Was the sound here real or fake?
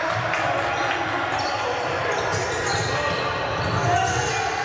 real